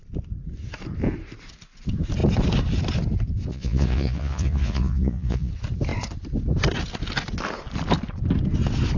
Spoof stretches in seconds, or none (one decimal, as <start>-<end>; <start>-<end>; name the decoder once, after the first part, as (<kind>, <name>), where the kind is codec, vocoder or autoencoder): 3.5-5.5 (vocoder, Vocos)